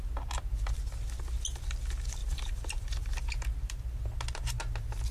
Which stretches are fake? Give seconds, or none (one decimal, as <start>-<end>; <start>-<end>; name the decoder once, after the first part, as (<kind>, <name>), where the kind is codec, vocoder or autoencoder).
2.2-3.2 (vocoder, BigVGAN v2)